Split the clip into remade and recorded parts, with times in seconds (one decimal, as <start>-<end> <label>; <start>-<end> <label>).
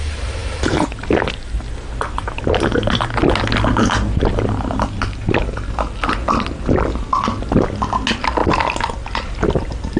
0.0-10.0 recorded